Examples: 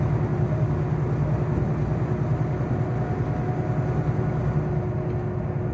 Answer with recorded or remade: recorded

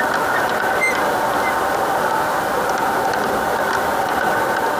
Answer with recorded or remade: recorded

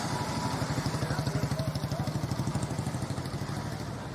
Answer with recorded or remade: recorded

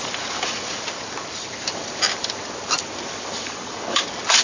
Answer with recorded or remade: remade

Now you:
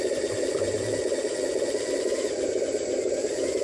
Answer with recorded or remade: remade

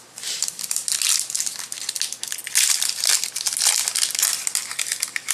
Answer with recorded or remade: recorded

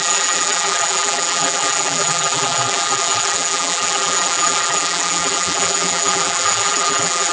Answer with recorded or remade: remade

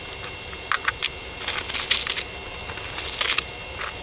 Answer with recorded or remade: recorded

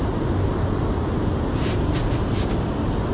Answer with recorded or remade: recorded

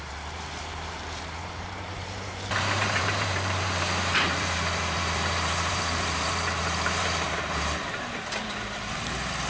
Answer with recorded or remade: remade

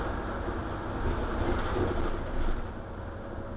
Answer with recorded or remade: recorded